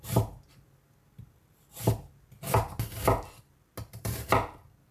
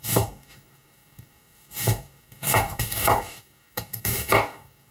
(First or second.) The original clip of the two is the first